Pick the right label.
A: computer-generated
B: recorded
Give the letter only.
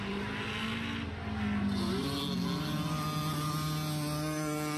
B